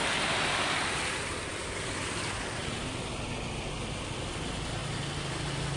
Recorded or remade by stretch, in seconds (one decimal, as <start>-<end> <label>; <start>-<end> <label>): 0.0-5.8 recorded